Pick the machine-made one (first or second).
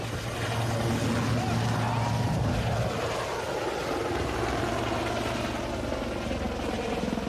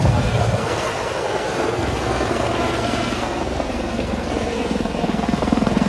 second